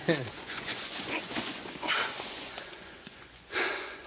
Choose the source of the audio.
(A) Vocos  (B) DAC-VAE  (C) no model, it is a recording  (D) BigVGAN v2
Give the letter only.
A